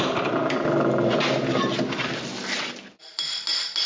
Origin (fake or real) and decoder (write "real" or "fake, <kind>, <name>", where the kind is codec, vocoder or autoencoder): real